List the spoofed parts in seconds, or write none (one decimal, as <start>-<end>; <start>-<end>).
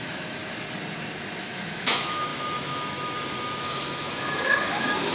0.0-0.4; 1.4-5.1